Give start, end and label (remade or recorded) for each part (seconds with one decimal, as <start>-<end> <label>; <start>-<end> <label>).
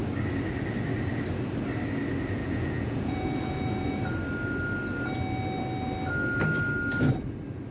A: 0.0-2.4 recorded; 2.4-4.0 remade; 4.0-7.7 recorded